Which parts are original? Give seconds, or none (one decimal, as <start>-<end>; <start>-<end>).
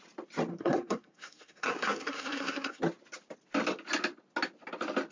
0.0-0.5; 2.8-5.1